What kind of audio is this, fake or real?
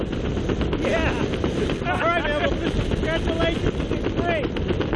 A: real